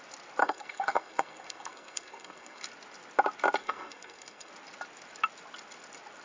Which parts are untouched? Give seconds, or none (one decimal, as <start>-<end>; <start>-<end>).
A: 0.0-0.4; 2.6-3.6; 4.5-6.2